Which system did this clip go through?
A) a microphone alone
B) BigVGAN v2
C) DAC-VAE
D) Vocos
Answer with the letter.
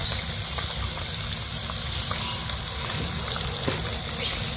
A